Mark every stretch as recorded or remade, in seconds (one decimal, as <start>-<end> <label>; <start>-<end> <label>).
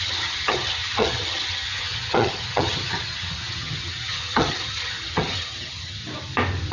0.0-6.0 remade; 6.0-6.7 recorded